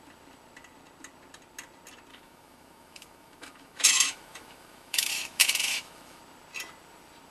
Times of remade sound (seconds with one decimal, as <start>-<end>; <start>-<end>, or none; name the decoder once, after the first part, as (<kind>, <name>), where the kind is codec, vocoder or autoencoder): 2.1-6.2 (autoencoder, DAC-VAE)

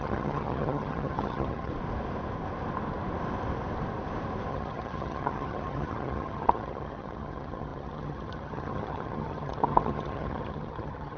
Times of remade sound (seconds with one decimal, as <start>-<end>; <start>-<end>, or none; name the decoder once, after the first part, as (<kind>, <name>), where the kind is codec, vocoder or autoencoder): 0.0-1.7 (vocoder, HiFi-GAN); 4.5-11.2